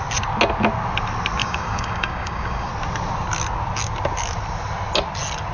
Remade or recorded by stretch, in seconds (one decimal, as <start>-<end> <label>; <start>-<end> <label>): 0.0-1.4 recorded; 1.4-2.7 remade; 2.7-5.5 recorded